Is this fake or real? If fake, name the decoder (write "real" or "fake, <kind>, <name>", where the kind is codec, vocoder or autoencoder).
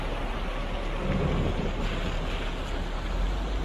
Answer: real